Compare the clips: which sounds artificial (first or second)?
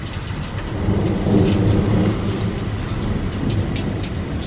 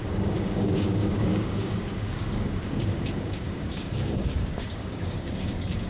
second